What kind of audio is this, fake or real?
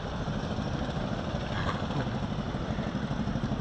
real